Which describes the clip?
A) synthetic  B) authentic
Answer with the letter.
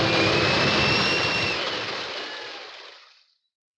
A